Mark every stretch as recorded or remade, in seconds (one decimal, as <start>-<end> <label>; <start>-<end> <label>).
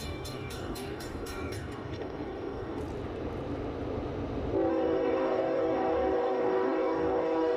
0.0-2.8 remade; 2.8-4.7 recorded; 4.7-7.6 remade